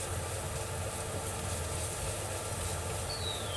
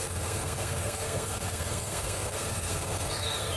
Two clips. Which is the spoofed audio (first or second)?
second